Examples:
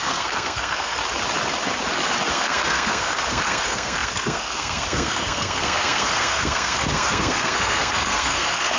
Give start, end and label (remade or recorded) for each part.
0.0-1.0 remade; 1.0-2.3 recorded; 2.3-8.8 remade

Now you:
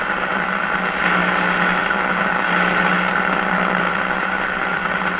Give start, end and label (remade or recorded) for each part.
0.0-5.2 recorded

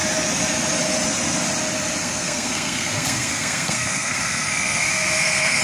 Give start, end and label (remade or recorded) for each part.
0.0-2.0 recorded; 2.0-5.6 remade

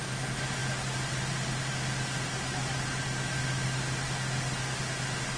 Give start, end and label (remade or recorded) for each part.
0.0-5.4 recorded

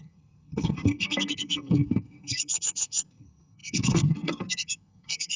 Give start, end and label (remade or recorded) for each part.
0.0-5.4 remade

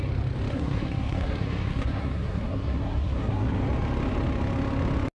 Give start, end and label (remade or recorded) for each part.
0.0-0.5 recorded; 0.5-3.6 remade; 3.6-5.1 recorded

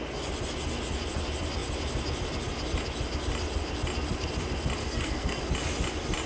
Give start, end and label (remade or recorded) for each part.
0.0-4.8 recorded; 4.8-5.4 remade; 5.4-6.3 recorded

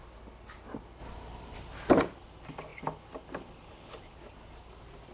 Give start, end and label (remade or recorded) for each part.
0.0-5.1 recorded